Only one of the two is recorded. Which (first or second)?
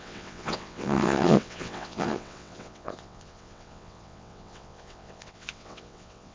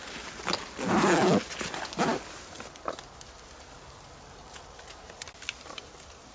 second